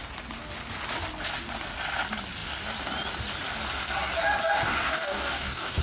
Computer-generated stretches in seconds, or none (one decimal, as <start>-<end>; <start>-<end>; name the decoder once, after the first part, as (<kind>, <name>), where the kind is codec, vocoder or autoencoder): 4.4-5.8 (codec, DAC)